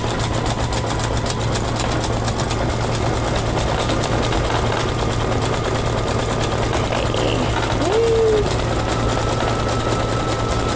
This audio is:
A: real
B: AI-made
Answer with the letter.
A